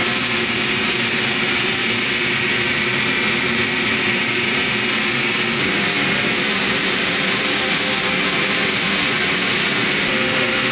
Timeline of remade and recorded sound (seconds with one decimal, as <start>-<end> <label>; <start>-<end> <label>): 0.0-10.7 recorded